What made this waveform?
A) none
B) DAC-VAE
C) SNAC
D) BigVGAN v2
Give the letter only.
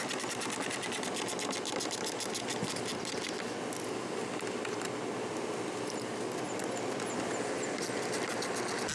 A